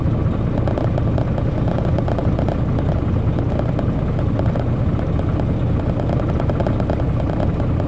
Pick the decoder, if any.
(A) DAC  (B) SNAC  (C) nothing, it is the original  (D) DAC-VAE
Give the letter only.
C